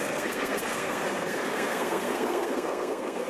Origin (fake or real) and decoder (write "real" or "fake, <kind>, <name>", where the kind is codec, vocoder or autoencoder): fake, codec, SNAC